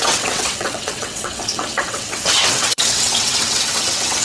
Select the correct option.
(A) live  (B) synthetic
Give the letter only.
B